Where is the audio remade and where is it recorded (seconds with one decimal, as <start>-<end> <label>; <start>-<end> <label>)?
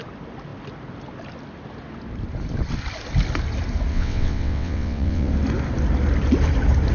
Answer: 0.0-3.9 recorded; 3.9-5.3 remade; 5.3-6.9 recorded